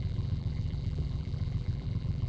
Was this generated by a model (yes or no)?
yes